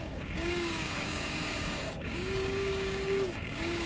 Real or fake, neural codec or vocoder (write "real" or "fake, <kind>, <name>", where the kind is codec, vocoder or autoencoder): fake, codec, DAC